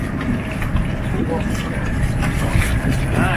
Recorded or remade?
recorded